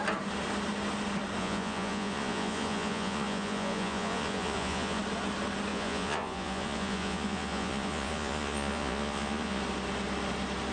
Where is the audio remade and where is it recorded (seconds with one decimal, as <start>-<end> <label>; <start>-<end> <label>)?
0.0-1.4 recorded; 1.4-5.0 remade; 5.0-5.7 recorded; 5.7-9.6 remade; 9.6-10.7 recorded